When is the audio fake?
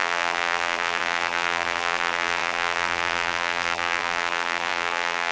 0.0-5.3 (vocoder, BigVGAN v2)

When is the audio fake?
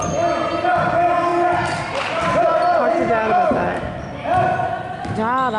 none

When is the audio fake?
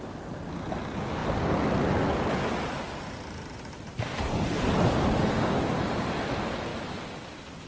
none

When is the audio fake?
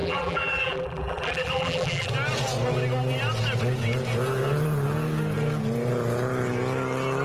0.0-2.1 (vocoder, BigVGAN v2)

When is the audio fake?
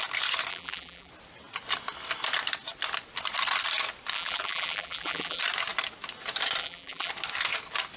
0.5-1.1 (vocoder, BigVGAN v2); 4.1-5.4; 6.6-7.1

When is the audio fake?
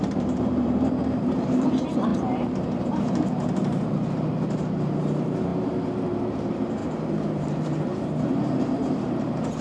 0.0-5.5 (vocoder, BigVGAN v2); 6.2-9.6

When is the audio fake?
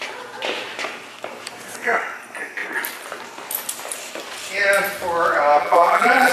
5.6-6.3 (vocoder, BigVGAN v2)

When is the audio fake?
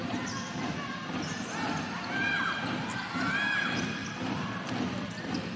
none